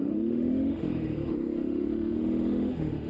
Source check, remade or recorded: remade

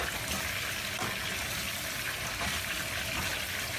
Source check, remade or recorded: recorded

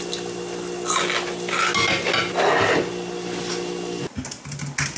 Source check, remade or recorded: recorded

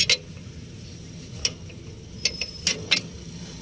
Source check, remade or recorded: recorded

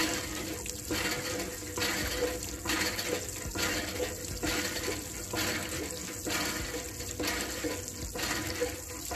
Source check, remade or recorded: recorded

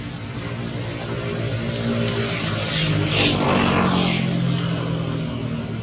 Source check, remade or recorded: recorded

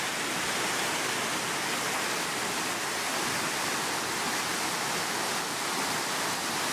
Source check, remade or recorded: recorded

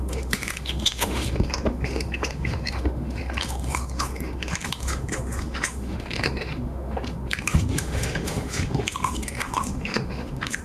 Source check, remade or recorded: remade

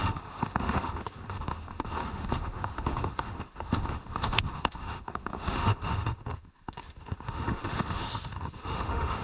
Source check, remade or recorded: remade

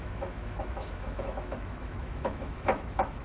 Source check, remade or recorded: remade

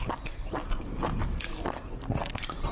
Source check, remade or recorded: recorded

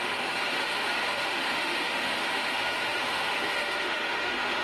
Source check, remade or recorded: remade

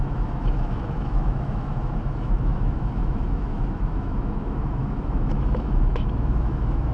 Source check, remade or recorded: remade